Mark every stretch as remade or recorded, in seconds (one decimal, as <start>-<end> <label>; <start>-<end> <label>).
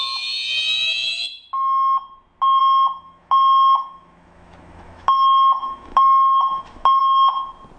0.0-2.6 recorded; 2.6-7.0 remade; 7.0-7.8 recorded